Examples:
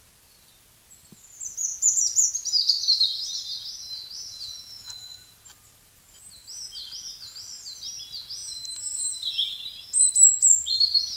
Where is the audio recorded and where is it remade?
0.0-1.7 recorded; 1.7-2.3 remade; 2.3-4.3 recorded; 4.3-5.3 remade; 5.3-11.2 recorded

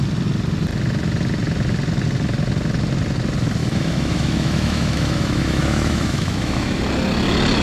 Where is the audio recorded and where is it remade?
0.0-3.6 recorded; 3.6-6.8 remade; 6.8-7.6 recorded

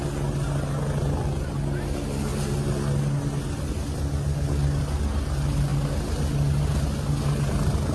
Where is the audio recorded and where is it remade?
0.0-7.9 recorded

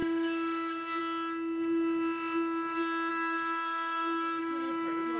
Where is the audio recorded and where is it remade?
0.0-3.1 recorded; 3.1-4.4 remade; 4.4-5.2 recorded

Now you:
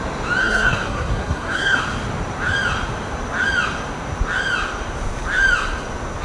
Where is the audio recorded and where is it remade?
0.0-0.4 recorded; 0.4-1.8 remade; 1.8-6.2 recorded

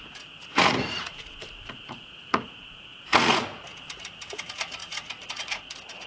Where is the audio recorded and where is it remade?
0.0-6.1 remade

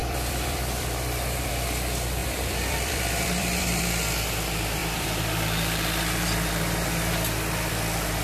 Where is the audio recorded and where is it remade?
0.0-1.5 remade; 1.5-2.2 recorded; 2.2-3.8 remade; 3.8-4.8 recorded; 4.8-7.7 remade; 7.7-8.2 recorded

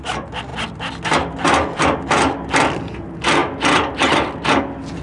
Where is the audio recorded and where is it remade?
0.0-5.0 recorded